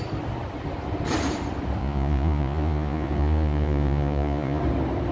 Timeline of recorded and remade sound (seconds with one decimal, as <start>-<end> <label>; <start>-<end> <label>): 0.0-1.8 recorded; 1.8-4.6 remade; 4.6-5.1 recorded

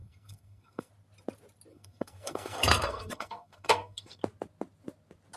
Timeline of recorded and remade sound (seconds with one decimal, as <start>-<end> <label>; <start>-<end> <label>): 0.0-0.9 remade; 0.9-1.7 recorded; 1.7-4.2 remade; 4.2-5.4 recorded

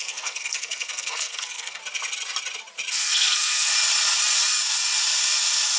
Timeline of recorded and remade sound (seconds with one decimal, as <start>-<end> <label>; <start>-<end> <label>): 0.0-1.8 remade; 1.8-2.9 recorded; 2.9-3.7 remade; 3.7-5.8 recorded